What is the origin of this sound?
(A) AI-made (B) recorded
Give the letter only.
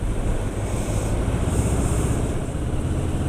B